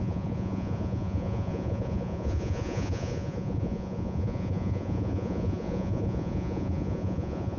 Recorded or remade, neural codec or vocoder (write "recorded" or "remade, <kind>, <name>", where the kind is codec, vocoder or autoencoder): remade, vocoder, Vocos